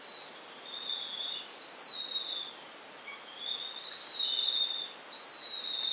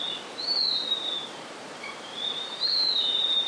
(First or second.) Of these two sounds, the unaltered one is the first